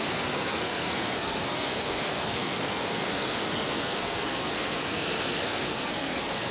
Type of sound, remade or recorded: remade